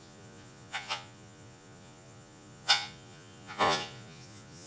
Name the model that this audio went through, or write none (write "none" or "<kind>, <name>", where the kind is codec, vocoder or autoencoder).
vocoder, Vocos